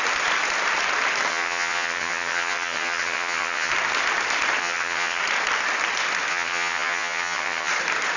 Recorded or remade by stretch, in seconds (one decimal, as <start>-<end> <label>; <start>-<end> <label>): 0.0-1.3 recorded; 1.3-3.7 remade; 3.7-4.6 recorded; 4.6-5.2 remade; 5.2-6.3 recorded; 6.3-7.7 remade; 7.7-8.2 recorded